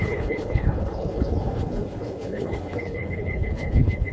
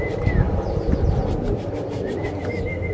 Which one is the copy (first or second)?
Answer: first